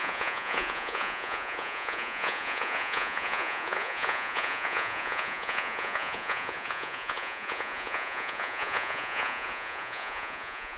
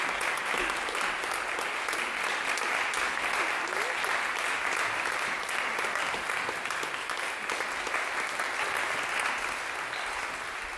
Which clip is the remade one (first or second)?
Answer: first